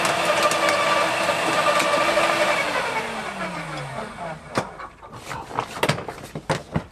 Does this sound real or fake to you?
real